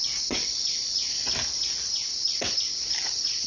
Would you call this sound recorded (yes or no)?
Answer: yes